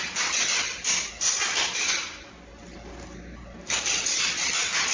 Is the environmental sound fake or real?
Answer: real